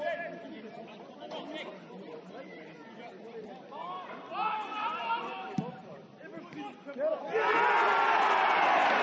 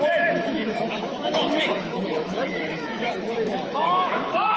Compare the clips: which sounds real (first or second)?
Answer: first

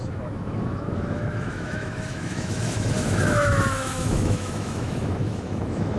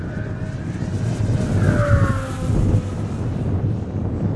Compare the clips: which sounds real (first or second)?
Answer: second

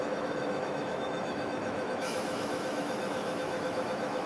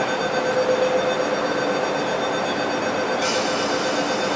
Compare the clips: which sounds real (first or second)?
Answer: second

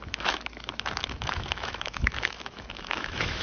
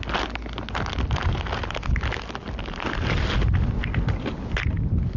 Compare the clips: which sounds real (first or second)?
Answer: second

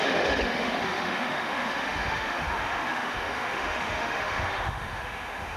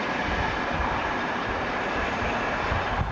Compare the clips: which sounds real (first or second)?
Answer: second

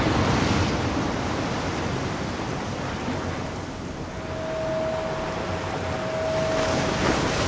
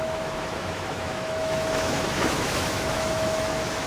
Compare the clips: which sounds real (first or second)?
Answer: first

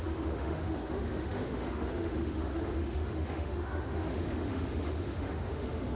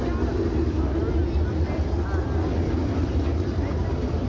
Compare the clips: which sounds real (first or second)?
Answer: second